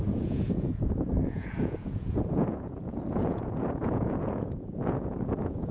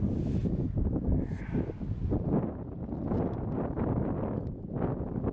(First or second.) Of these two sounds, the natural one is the second